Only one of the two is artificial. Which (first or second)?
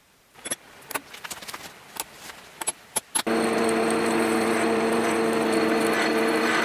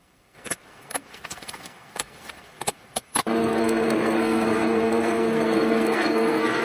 second